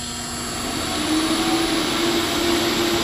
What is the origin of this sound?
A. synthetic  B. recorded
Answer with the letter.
B